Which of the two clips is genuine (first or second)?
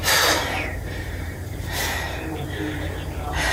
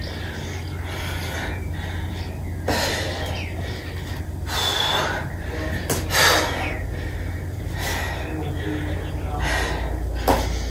second